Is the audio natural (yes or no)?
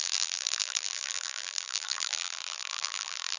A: no